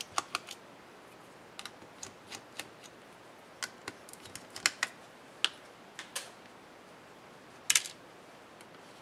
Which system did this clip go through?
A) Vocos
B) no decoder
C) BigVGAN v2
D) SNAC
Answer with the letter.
B